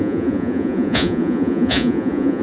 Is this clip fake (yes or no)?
yes